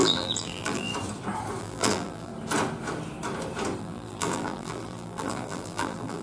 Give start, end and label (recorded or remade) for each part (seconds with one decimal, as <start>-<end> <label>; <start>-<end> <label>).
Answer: 0.0-0.9 remade; 0.9-1.6 recorded; 1.6-2.3 remade; 2.3-3.8 recorded; 3.8-6.2 remade